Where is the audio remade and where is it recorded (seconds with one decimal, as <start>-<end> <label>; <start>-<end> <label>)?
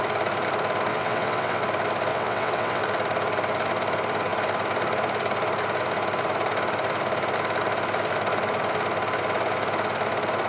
0.0-0.9 recorded; 0.9-1.6 remade; 1.6-2.1 recorded; 2.1-2.8 remade; 2.8-10.5 recorded